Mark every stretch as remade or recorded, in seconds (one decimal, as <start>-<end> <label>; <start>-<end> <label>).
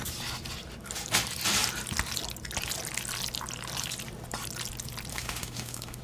0.0-5.1 recorded; 5.1-6.0 remade